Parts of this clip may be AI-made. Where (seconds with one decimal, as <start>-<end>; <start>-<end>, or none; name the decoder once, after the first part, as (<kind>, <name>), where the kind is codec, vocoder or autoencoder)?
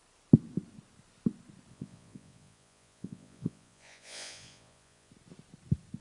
1.7-5.1 (vocoder, Vocos)